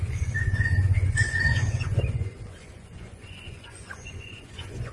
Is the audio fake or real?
fake